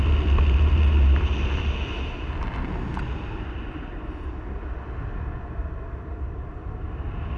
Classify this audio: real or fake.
real